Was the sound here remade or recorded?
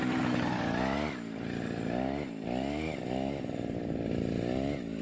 recorded